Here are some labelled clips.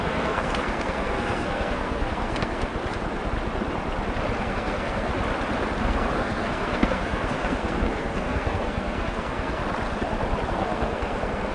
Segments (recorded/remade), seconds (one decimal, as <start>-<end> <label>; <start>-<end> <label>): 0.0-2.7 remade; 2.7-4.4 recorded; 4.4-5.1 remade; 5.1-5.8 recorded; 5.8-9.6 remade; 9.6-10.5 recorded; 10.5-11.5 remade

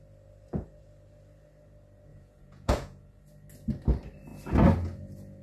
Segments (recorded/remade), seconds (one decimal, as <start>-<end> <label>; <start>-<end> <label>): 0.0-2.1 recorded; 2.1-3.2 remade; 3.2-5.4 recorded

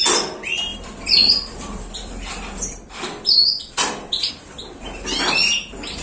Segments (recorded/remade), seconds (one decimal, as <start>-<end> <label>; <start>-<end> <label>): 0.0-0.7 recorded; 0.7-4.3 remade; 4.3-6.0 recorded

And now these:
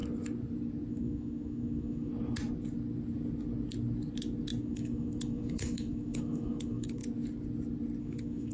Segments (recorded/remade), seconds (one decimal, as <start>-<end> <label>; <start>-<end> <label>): 0.0-0.9 recorded; 0.9-2.1 remade; 2.1-4.6 recorded; 4.6-7.0 remade; 7.0-8.0 recorded; 8.0-8.5 remade

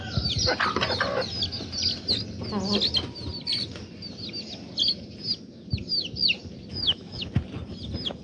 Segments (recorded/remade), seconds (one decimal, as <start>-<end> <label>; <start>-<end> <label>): 0.0-6.7 recorded; 6.7-7.2 remade; 7.2-8.2 recorded